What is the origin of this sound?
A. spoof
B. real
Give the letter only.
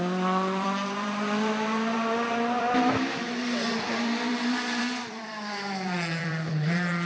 A